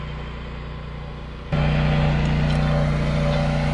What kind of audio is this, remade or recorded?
recorded